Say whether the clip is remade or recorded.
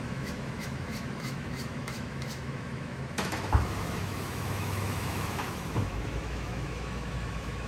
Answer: remade